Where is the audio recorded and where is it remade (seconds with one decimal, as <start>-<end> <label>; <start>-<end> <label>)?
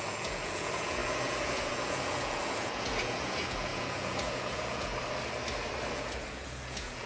0.0-4.9 remade; 4.9-5.9 recorded; 5.9-7.1 remade